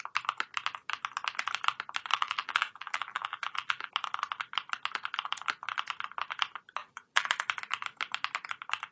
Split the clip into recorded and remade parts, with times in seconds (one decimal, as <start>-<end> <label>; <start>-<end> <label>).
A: 0.0-2.1 recorded; 2.1-3.9 remade; 3.9-6.8 recorded; 6.8-7.3 remade; 7.3-8.9 recorded